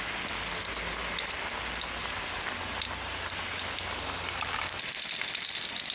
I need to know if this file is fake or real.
real